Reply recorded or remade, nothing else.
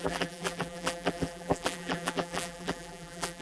remade